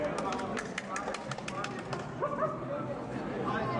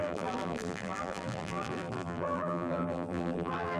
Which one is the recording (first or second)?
first